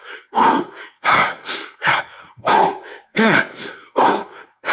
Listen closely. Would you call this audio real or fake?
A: fake